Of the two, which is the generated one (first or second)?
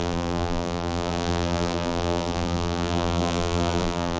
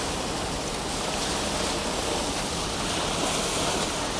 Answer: first